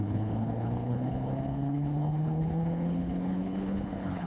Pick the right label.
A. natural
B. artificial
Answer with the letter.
B